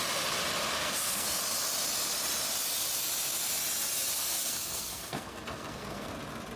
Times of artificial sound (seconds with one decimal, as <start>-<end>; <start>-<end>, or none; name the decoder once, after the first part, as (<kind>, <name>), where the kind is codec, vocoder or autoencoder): 0.8-1.4 (codec, SNAC); 4.2-6.1